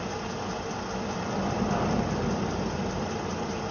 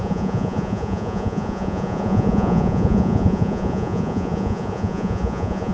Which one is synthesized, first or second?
second